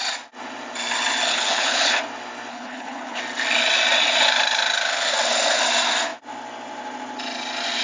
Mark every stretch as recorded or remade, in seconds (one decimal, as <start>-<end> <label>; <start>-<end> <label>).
0.0-1.3 recorded; 1.3-2.0 remade; 2.0-2.5 recorded; 2.5-3.2 remade; 3.2-7.8 recorded